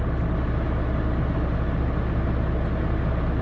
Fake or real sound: real